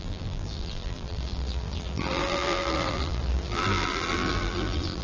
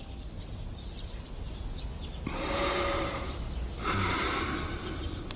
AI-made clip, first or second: first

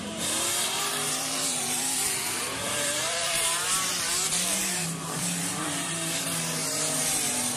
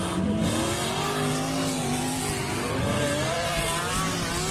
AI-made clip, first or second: first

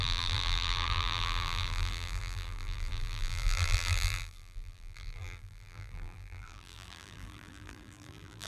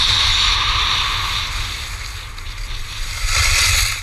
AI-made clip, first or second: first